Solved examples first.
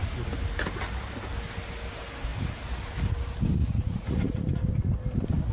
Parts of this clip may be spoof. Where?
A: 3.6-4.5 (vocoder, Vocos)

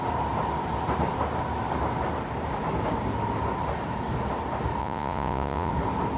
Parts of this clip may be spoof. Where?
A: 4.8-5.7 (vocoder, Vocos)

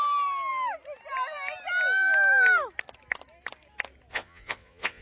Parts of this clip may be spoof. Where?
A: 4.1-5.0 (vocoder, Vocos)

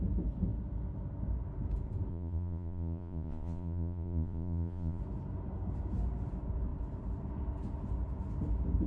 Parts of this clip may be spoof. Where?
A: 2.1-5.0 (vocoder, Vocos)